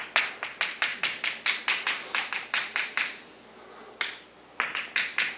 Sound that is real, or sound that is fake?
real